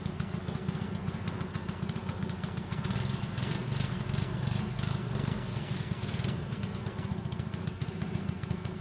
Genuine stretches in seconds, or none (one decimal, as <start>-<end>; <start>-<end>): none